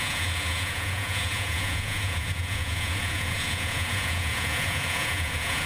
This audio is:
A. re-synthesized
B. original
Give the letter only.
A